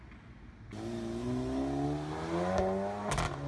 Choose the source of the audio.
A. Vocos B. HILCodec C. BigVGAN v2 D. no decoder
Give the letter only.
D